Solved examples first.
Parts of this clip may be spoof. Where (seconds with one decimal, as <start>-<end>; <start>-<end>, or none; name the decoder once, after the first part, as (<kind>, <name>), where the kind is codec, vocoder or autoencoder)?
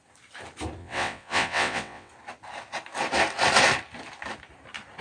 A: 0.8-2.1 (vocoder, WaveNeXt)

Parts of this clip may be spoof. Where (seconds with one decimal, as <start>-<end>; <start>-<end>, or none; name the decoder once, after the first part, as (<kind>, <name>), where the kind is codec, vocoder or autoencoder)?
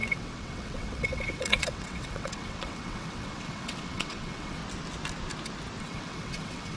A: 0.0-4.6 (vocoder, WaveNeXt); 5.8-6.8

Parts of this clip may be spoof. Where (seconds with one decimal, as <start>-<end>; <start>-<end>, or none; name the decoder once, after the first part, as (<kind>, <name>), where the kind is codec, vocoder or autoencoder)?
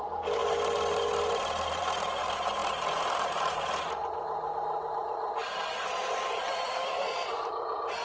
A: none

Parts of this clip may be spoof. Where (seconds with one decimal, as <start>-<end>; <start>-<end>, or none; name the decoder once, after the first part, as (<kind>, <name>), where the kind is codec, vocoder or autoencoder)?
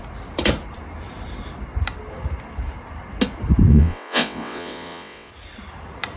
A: 3.7-5.3 (vocoder, WaveNeXt)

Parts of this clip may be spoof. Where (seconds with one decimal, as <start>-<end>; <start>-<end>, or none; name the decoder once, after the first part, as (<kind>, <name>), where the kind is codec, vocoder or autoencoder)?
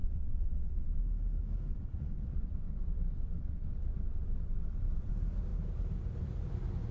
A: 0.0-1.0 (vocoder, WaveNeXt); 1.7-5.1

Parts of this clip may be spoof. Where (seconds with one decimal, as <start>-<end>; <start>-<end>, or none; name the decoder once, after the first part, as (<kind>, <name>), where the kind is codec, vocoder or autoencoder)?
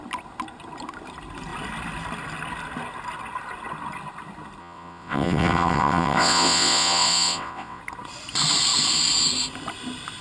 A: 4.6-7.8 (vocoder, WaveNeXt)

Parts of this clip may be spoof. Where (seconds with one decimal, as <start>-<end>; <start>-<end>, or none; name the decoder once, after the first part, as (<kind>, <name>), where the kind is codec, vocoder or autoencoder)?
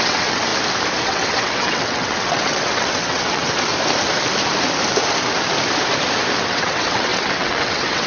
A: 0.0-0.5 (vocoder, WaveNeXt); 1.0-3.7; 6.5-8.1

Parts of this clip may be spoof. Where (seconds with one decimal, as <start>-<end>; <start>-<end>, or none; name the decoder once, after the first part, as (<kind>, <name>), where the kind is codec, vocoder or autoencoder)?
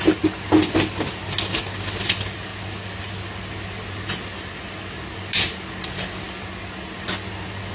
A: none